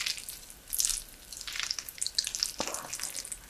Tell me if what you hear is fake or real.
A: real